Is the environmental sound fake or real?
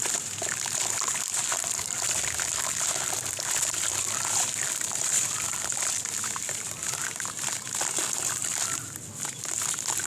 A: real